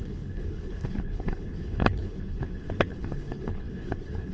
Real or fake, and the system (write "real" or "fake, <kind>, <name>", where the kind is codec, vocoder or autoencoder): fake, codec, HILCodec